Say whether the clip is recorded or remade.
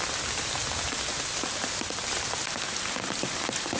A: recorded